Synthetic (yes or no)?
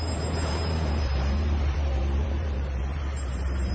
yes